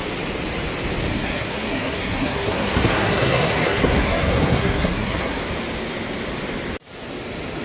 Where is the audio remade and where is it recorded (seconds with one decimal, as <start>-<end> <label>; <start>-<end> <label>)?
0.0-1.1 recorded; 1.1-5.4 remade; 5.4-7.6 recorded